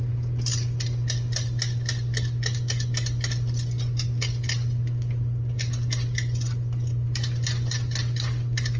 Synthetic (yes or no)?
no